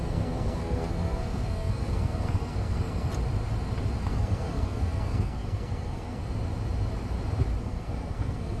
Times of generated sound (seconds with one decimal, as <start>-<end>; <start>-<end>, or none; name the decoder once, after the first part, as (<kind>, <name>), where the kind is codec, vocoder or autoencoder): 0.0-3.1 (codec, SNAC); 4.0-6.2; 7.6-8.6